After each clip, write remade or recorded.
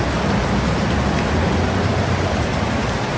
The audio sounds recorded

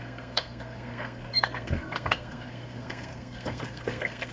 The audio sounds remade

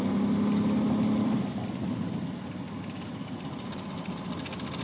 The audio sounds recorded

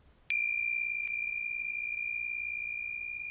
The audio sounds recorded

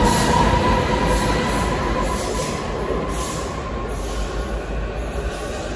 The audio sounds recorded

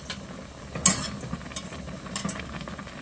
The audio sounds recorded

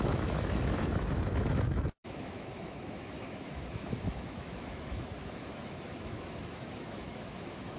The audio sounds remade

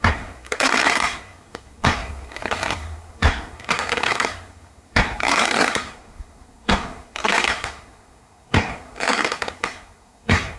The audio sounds remade